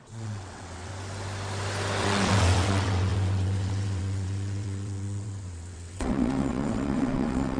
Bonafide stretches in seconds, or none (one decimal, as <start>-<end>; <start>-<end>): 0.9-2.0